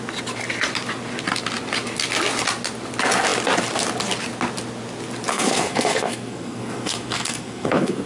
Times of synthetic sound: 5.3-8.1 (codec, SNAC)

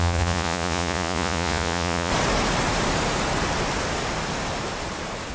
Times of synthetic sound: 0.0-2.1 (vocoder, Vocos)

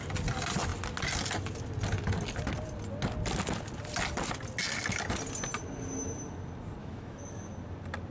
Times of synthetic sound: 6.8-7.5 (autoencoder, DAC-VAE)

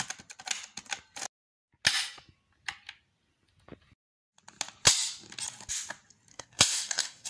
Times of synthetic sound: 6.3-7.3 (codec, SNAC)